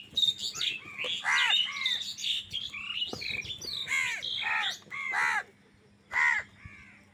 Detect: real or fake real